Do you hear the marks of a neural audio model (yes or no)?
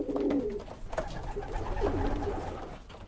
no